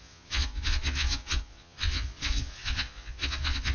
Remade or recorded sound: remade